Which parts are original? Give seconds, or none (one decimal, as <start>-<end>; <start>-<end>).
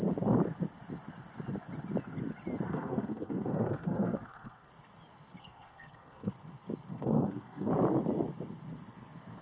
0.0-2.7; 4.7-5.4; 6.3-6.9; 7.7-9.4